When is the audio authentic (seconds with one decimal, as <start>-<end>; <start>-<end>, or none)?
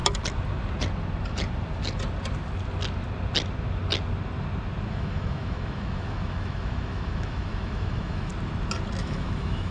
0.0-4.9; 8.3-9.0